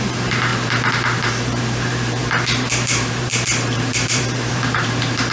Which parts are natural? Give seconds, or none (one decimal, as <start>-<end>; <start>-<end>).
0.5-1.2